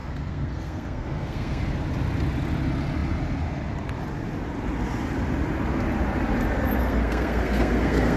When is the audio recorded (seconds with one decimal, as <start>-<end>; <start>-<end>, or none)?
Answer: 1.6-6.8